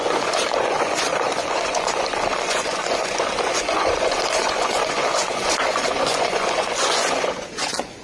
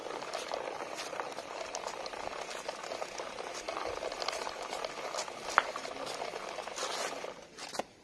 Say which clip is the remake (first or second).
first